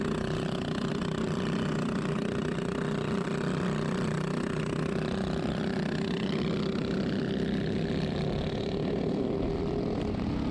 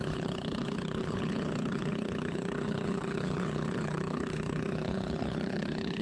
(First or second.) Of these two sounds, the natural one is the first